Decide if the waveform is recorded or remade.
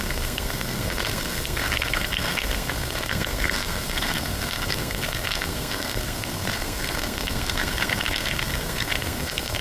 remade